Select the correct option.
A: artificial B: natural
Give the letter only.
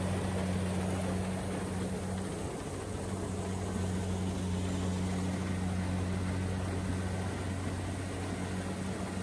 B